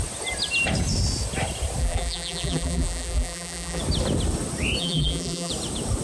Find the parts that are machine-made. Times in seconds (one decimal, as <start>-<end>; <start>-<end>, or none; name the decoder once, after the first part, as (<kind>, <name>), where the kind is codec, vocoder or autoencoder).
1.8-3.8 (vocoder, BigVGAN v2); 4.8-5.5